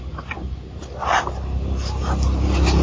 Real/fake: real